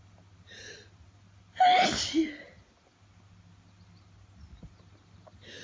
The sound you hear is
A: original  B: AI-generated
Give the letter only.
A